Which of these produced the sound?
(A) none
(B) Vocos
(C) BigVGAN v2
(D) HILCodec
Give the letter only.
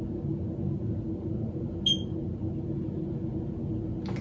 A